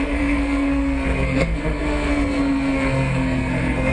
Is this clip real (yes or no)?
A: no